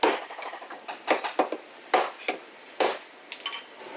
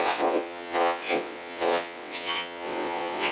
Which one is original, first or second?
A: first